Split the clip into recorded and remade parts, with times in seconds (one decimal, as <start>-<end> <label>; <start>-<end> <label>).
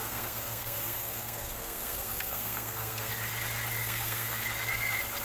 0.0-3.1 remade; 3.1-3.8 recorded; 3.8-4.4 remade; 4.4-5.2 recorded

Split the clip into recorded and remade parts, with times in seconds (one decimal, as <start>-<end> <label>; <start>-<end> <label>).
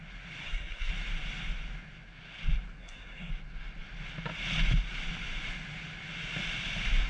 0.0-0.4 recorded; 0.4-0.9 remade; 0.9-2.8 recorded; 2.8-3.3 remade; 3.3-7.1 recorded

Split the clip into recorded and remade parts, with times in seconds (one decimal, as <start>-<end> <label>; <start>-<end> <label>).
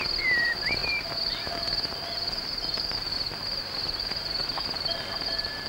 0.0-5.7 remade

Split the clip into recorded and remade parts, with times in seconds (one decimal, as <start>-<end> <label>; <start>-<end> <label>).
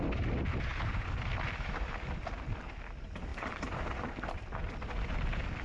0.0-3.3 recorded; 3.3-3.8 remade; 3.8-5.6 recorded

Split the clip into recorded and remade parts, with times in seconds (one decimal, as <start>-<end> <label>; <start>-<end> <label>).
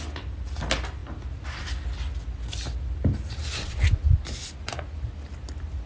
0.0-5.9 recorded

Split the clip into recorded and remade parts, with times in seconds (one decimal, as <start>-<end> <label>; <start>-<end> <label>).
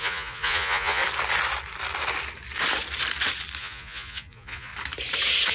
0.0-1.0 remade; 1.0-3.6 recorded; 3.6-4.7 remade; 4.7-5.5 recorded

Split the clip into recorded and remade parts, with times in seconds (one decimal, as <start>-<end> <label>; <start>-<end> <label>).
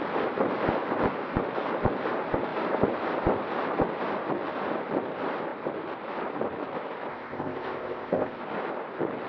0.0-7.1 recorded; 7.1-8.4 remade; 8.4-9.3 recorded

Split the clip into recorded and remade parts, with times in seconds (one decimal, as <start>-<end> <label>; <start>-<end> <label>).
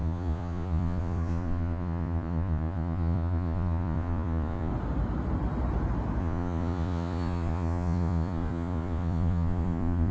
0.0-4.7 remade; 4.7-6.2 recorded; 6.2-10.1 remade